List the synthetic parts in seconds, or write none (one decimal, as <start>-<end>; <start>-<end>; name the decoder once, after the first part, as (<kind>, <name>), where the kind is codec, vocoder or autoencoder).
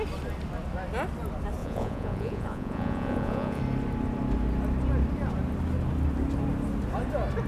1.6-3.6 (vocoder, Vocos)